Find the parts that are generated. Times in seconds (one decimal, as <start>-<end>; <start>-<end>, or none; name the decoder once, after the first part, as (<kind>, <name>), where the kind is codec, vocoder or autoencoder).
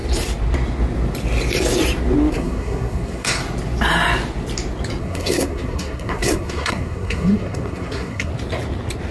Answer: 2.3-3.4 (codec, SNAC); 5.0-8.3